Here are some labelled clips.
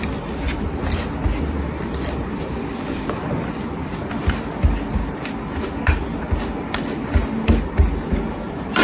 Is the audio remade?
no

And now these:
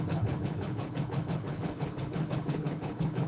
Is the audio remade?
yes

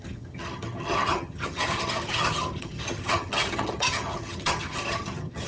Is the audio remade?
yes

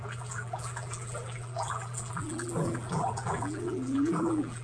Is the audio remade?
yes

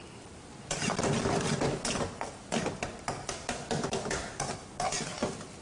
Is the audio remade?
no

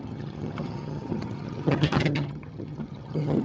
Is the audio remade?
yes